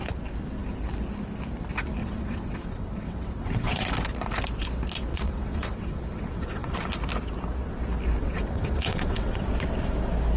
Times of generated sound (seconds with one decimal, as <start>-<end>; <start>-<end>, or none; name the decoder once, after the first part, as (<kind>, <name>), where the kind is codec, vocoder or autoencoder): 2.0-3.9 (vocoder, WaveNeXt); 5.1-6.8; 8.2-9.4